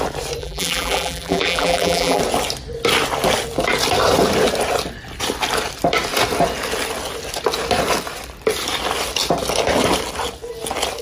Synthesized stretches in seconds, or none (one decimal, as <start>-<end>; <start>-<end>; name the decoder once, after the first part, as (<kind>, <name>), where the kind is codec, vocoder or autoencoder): 0.4-2.2 (vocoder, BigVGAN v2)